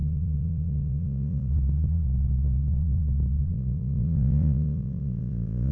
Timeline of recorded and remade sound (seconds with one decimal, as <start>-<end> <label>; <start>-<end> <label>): 0.0-5.7 remade